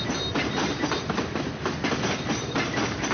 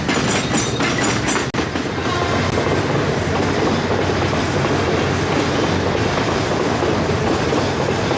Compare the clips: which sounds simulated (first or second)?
first